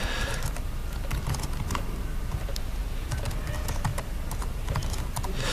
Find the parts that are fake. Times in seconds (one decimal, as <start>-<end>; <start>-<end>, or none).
2.8-3.5; 3.9-5.0